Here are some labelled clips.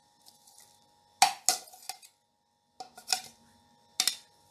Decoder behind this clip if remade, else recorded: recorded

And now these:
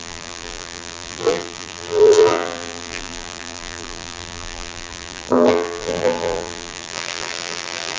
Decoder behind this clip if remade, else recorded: remade, vocoder, BigVGAN v2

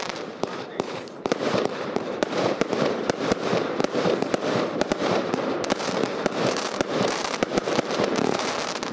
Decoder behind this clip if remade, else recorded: remade, vocoder, BigVGAN v2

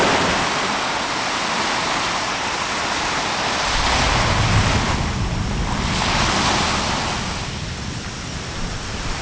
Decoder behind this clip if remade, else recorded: recorded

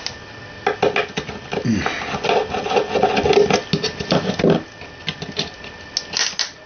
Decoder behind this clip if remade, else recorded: recorded